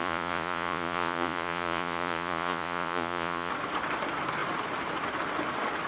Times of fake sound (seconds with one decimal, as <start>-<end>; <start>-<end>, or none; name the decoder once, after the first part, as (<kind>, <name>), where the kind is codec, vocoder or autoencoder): 0.0-3.5 (vocoder, Vocos)